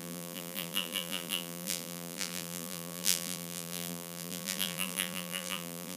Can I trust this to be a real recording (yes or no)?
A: no